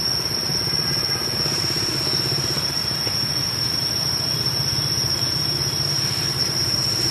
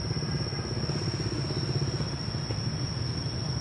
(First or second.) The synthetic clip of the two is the first